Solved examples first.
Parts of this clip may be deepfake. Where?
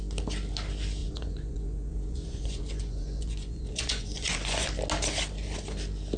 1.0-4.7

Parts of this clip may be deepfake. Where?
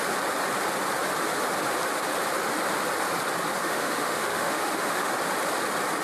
3.6-5.1